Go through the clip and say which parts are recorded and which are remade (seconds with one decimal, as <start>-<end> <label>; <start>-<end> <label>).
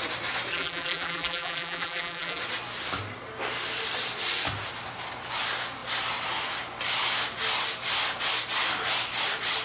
0.0-0.5 recorded; 0.5-2.4 remade; 2.4-9.6 recorded